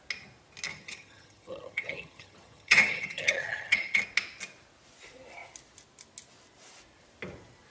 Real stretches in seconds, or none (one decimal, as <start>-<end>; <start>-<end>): 0.0-0.7; 4.0-7.7